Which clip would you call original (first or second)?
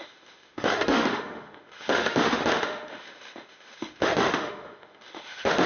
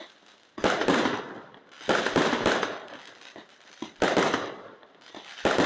second